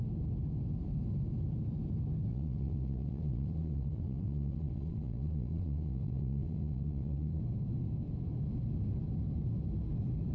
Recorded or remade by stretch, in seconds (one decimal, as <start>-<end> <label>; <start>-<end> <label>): 0.0-2.3 recorded; 2.3-7.4 remade; 7.4-10.3 recorded